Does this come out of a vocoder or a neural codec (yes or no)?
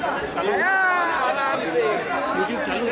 no